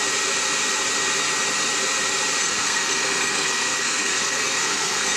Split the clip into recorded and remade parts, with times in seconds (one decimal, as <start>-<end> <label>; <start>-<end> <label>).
0.0-2.4 recorded; 2.4-5.2 remade